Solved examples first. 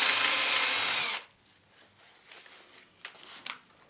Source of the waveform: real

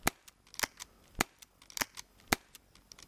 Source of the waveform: real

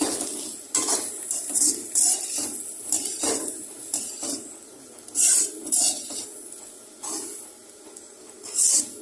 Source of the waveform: real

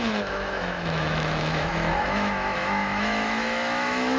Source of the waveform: fake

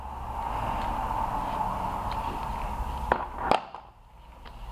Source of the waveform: real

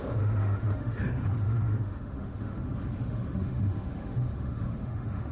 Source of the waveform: fake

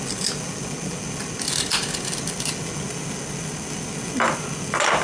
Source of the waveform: real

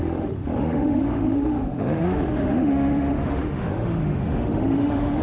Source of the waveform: fake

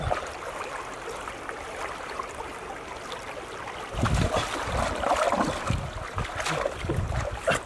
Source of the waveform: real